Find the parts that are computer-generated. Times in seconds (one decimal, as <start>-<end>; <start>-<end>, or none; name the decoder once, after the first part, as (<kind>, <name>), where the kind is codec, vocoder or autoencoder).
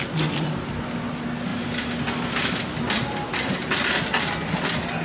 none